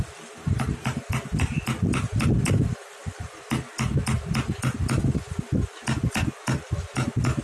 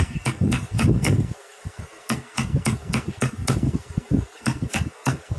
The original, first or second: first